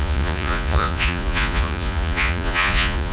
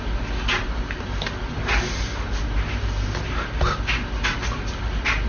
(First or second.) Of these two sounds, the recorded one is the second